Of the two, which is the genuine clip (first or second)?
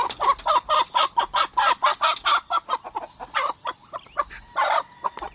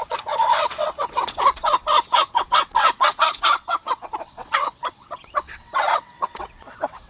first